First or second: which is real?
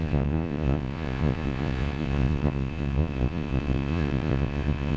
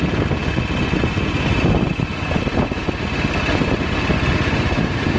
second